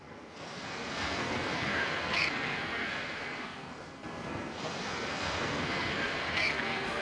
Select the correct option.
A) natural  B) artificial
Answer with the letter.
B